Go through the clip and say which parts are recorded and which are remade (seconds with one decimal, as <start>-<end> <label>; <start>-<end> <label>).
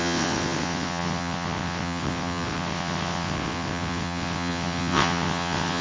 0.0-5.8 remade